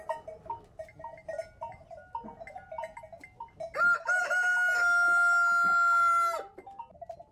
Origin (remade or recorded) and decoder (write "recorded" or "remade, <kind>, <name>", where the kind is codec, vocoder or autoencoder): recorded